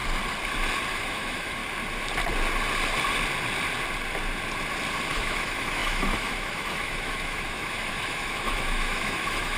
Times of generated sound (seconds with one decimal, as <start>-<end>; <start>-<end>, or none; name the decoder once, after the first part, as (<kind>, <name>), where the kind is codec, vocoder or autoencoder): 0.9-1.6 (autoencoder, DAC-VAE); 5.1-9.6